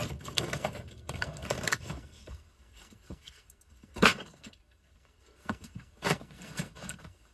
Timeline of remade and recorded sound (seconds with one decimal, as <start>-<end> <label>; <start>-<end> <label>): 0.0-7.3 remade